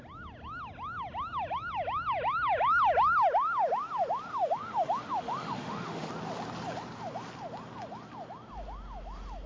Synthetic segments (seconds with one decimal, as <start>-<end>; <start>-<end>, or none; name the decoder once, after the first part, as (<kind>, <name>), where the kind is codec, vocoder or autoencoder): 4.3-6.1 (autoencoder, DAC-VAE)